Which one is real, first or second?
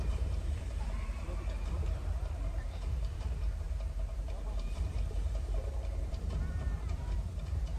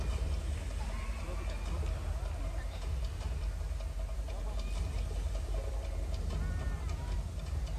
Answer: second